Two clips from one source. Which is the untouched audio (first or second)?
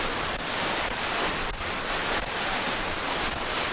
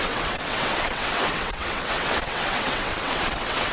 first